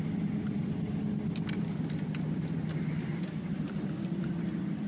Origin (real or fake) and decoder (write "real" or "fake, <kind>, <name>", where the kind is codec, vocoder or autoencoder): real